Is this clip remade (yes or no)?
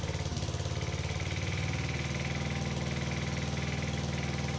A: no